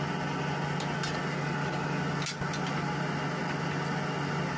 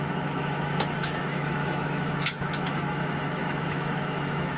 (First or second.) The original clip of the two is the first